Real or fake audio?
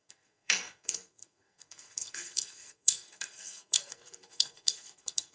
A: fake